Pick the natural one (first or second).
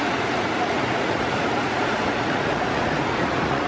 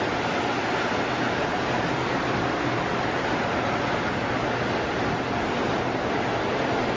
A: second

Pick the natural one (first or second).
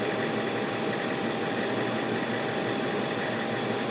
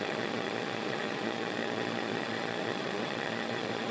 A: first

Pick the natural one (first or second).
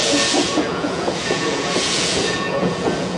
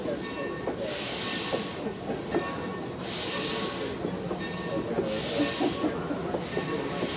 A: second